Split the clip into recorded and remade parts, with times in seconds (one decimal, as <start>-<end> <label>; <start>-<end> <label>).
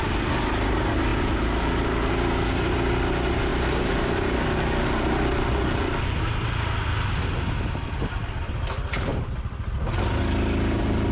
0.0-11.1 recorded